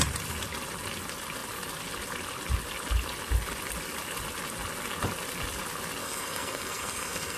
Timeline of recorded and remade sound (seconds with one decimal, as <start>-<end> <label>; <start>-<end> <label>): 0.0-6.0 recorded; 6.0-7.4 remade